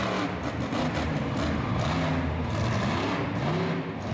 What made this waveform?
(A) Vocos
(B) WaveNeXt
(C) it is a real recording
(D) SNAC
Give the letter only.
C